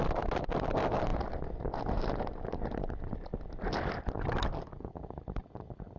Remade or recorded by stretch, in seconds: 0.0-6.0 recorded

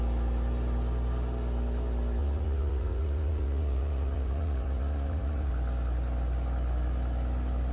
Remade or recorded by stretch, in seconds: 0.0-2.2 recorded; 2.2-5.5 remade; 5.5-7.7 recorded

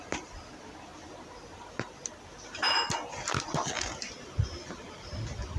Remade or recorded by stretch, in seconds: 0.0-5.6 recorded

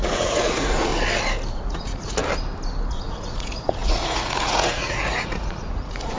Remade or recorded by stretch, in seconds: 0.0-0.9 remade; 0.9-1.5 recorded; 1.5-2.2 remade; 2.2-2.9 recorded; 2.9-6.2 remade

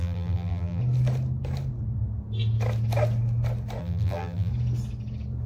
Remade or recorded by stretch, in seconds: 0.0-0.8 remade; 0.8-3.8 recorded; 3.8-4.5 remade; 4.5-5.5 recorded

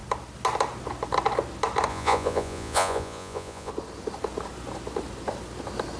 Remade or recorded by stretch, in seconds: 0.0-1.9 recorded; 1.9-3.7 remade; 3.7-6.0 recorded

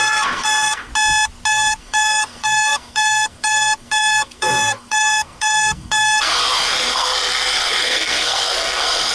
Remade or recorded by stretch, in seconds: 0.0-0.9 remade; 0.9-1.5 recorded; 1.5-6.4 remade; 6.4-6.9 recorded; 6.9-9.1 remade

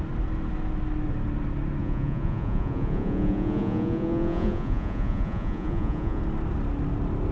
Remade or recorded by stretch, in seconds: 0.0-1.8 recorded; 1.8-6.2 remade; 6.2-7.3 recorded